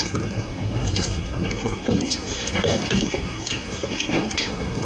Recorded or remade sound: remade